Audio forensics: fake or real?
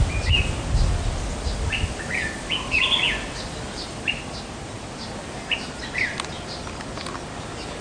real